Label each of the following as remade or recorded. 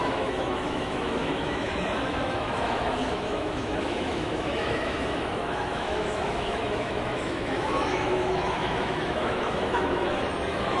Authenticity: remade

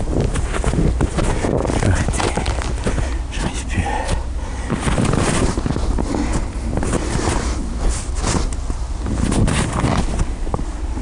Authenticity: recorded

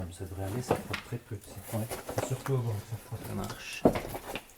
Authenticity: recorded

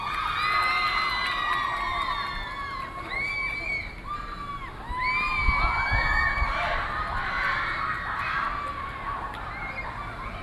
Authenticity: recorded